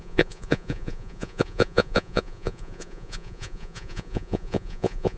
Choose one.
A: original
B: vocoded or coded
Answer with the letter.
B